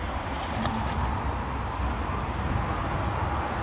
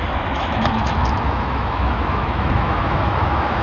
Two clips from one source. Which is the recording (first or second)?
first